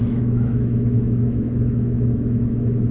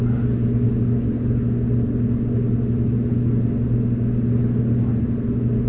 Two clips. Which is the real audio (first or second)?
second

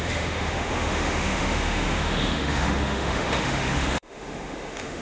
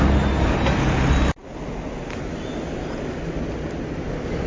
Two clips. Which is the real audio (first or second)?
second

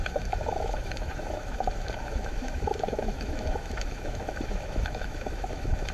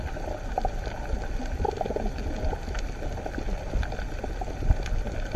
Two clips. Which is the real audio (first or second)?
second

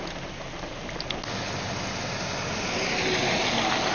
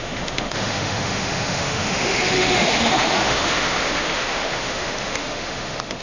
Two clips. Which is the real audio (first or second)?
first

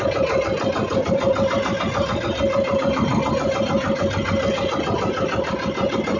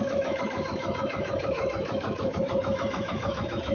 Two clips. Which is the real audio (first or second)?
first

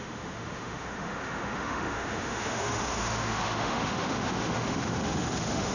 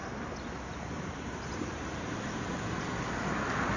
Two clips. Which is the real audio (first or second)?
second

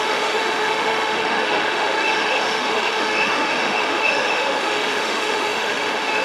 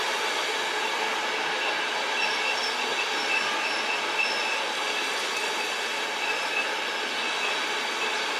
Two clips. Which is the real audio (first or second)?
second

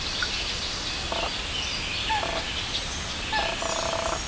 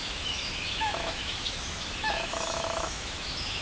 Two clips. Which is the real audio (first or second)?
first